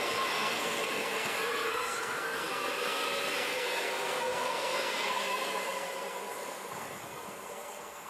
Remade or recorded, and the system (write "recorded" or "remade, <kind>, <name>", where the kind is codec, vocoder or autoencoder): remade, codec, SNAC